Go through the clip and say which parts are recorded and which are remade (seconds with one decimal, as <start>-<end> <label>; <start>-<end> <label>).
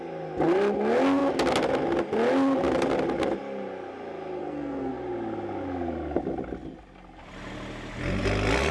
0.0-4.4 recorded; 4.4-4.9 remade; 4.9-8.7 recorded